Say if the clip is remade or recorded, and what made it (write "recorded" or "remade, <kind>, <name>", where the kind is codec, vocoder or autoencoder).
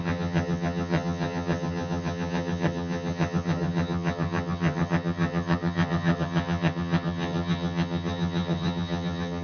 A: remade, vocoder, HiFi-GAN